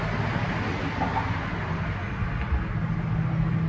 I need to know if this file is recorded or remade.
recorded